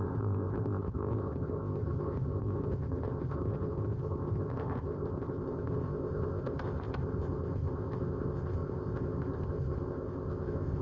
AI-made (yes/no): yes